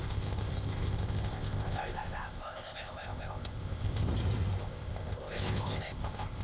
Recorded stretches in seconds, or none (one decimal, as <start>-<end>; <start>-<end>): 4.1-4.6

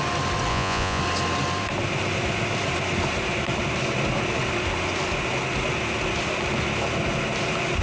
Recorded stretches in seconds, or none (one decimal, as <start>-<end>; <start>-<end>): 0.0-0.5; 1.0-7.8